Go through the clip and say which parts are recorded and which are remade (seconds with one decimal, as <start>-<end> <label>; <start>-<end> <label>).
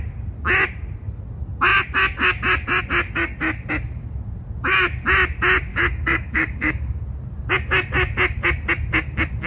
0.0-5.7 recorded; 5.7-7.0 remade; 7.0-9.5 recorded